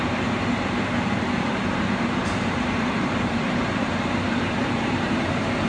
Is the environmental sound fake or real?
fake